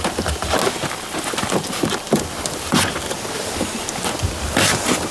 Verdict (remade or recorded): recorded